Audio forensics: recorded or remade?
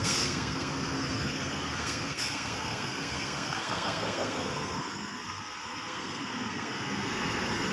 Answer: remade